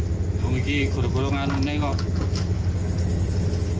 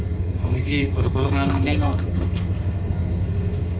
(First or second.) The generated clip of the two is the second